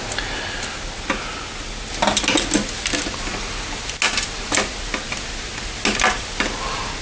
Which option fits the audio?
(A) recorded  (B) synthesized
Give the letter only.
A